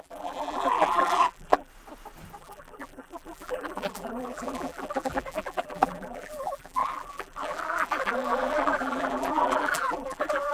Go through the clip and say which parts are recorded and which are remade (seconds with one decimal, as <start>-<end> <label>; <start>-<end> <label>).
0.0-1.7 remade; 1.7-2.4 recorded; 2.4-10.5 remade